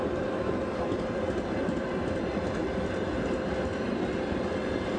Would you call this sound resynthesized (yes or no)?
no